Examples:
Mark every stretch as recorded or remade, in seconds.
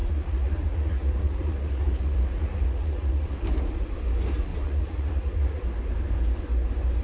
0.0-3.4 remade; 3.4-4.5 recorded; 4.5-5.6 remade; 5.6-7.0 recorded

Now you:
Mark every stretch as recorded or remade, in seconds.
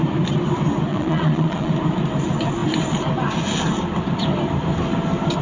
0.0-0.9 recorded; 0.9-1.7 remade; 1.7-5.4 recorded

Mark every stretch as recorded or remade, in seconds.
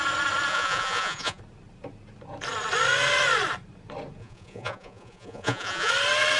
0.0-0.5 recorded; 0.5-1.4 remade; 1.4-4.2 recorded; 4.2-5.9 remade; 5.9-6.4 recorded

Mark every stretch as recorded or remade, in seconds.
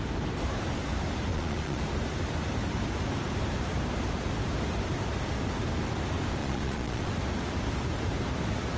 0.0-1.3 recorded; 1.3-1.8 remade; 1.8-6.4 recorded; 6.4-7.1 remade; 7.1-8.8 recorded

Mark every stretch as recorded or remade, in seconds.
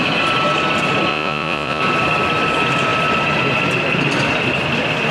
0.0-1.1 recorded; 1.1-1.8 remade; 1.8-5.1 recorded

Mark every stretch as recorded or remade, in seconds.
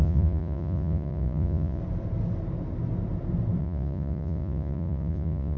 0.0-1.8 remade; 1.8-3.6 recorded; 3.6-5.6 remade